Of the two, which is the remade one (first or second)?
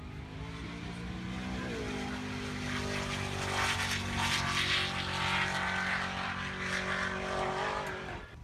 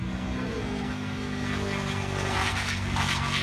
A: second